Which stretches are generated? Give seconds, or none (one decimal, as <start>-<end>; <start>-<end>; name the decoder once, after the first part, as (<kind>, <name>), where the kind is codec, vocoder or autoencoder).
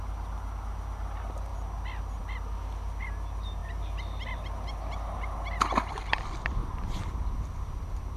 none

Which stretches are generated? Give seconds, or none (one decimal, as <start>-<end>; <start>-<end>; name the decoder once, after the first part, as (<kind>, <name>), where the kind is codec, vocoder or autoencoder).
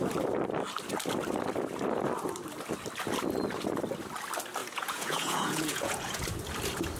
4.6-6.2 (vocoder, Vocos)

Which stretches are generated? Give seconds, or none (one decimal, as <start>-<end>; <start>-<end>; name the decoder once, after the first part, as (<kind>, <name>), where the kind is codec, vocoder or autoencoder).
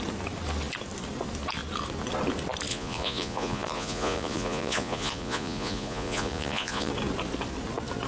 2.7-6.9 (vocoder, Vocos)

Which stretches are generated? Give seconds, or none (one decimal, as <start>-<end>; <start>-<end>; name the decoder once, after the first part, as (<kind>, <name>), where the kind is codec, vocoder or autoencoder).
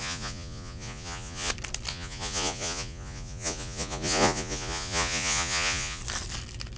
0.0-1.5 (vocoder, Vocos); 1.9-6.0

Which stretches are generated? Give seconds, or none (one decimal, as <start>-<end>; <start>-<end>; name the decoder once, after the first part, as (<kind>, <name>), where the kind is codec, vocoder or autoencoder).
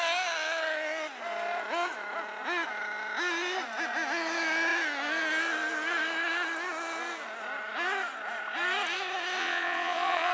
9.4-10.3 (vocoder, Vocos)